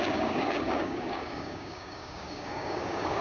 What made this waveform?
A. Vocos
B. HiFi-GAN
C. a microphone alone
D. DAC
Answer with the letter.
D